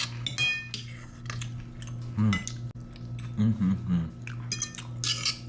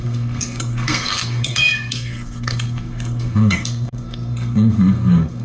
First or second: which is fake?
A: second